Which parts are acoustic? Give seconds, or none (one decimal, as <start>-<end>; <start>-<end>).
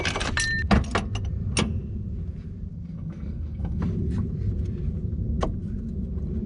0.0-2.7; 3.8-6.5